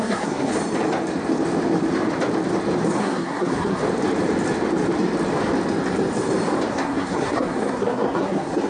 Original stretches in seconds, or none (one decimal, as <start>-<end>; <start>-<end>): 0.5-3.0; 3.8-6.7